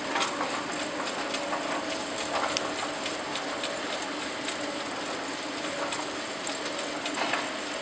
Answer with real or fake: real